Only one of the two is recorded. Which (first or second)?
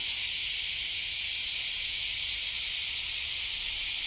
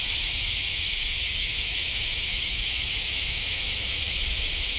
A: first